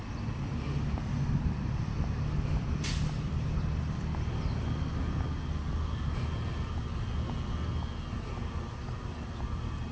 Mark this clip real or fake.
real